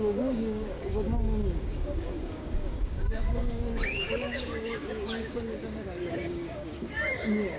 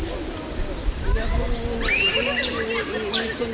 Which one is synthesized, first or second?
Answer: first